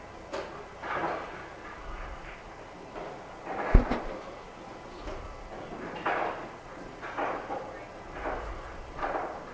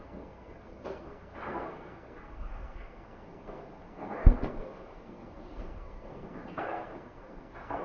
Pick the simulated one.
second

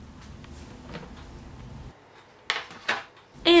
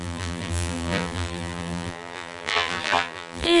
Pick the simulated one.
second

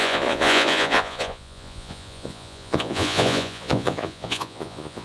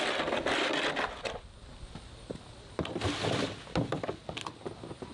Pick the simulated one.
first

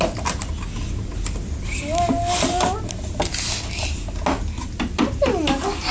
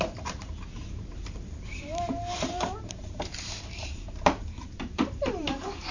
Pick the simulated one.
second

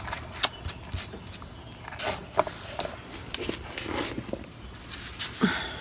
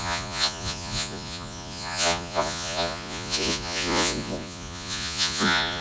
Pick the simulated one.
second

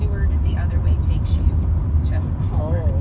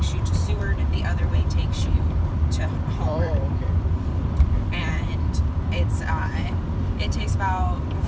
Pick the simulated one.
second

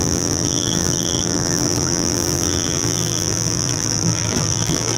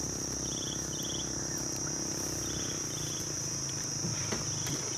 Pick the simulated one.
first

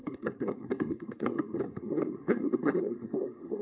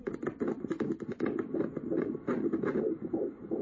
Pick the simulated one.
first